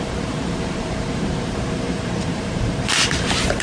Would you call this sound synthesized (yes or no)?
yes